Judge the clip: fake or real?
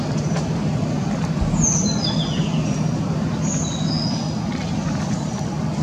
real